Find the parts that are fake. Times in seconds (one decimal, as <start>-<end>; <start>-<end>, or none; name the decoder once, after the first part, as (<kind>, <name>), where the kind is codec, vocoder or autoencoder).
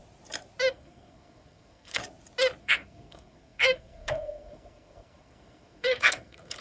0.7-2.0 (codec, SNAC); 2.6-6.6